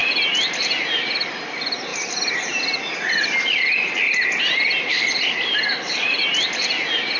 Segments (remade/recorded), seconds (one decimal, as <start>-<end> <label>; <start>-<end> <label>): 0.0-7.2 recorded